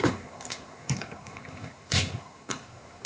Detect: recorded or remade remade